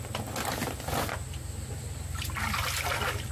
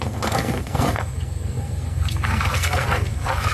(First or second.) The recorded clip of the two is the first